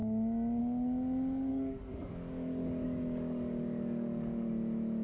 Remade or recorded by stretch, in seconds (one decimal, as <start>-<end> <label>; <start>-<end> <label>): 0.0-1.5 recorded; 1.5-4.5 remade; 4.5-5.0 recorded